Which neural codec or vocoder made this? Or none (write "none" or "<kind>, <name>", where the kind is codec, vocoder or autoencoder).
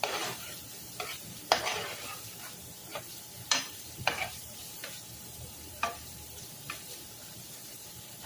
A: vocoder, BigVGAN v2